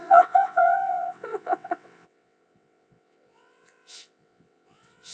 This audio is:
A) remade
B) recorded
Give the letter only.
A